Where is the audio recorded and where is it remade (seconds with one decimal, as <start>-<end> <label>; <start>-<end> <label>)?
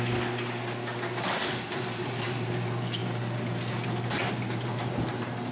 0.0-5.5 recorded